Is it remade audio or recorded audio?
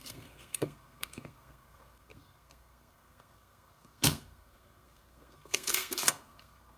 remade